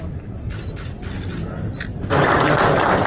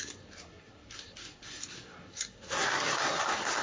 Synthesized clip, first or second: second